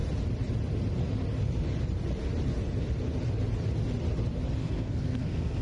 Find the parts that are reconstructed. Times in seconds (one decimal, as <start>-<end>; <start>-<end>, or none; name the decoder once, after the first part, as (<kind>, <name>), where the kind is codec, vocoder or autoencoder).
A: 4.6-5.6 (codec, SNAC)